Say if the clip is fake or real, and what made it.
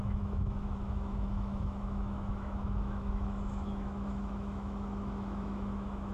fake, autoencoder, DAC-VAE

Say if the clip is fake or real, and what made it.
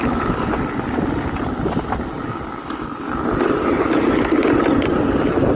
real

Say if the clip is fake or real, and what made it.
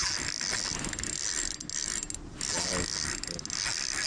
real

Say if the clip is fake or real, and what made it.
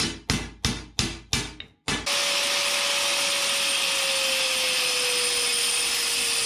real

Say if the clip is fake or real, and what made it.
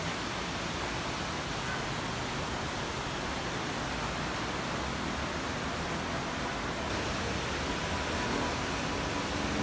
real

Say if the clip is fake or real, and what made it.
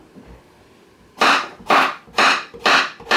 fake, vocoder, BigVGAN v2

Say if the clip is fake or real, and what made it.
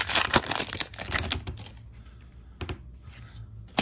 real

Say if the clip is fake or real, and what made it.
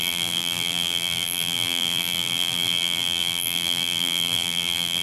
fake, vocoder, BigVGAN v2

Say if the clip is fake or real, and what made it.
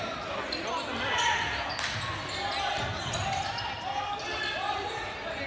real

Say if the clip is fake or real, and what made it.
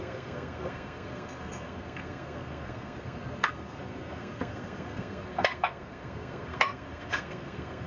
fake, codec, SNAC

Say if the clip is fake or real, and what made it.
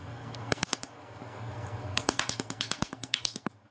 fake, codec, SNAC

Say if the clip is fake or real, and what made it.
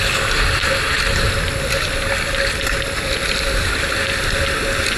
real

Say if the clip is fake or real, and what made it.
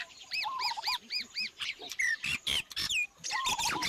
fake, vocoder, BigVGAN v2